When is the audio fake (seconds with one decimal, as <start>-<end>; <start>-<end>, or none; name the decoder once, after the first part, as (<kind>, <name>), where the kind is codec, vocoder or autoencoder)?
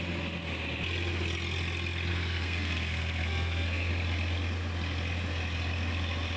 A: 2.1-3.9 (codec, SNAC)